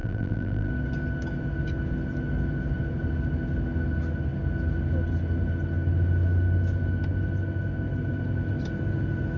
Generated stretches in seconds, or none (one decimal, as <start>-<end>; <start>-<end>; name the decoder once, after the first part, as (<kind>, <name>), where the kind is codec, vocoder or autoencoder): 0.0-0.7 (vocoder, BigVGAN v2)